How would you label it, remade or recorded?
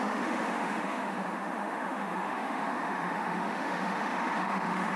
remade